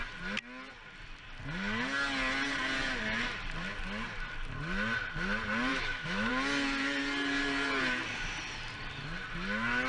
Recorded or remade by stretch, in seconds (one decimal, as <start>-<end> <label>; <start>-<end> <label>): 0.0-5.7 recorded; 5.7-6.3 remade; 6.3-9.9 recorded